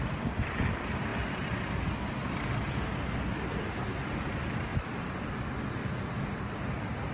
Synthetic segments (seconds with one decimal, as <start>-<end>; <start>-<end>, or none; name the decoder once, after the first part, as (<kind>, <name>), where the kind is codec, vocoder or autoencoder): none